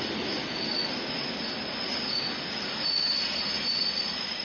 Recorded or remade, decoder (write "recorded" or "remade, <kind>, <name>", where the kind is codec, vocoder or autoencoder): recorded